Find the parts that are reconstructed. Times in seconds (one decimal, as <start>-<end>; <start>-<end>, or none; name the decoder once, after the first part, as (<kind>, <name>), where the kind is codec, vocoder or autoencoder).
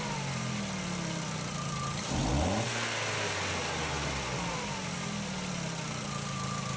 none